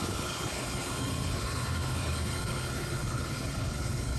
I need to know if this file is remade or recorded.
remade